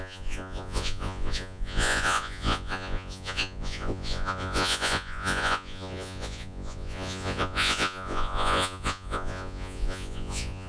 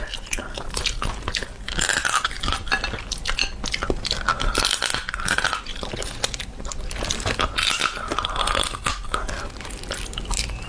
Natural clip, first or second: second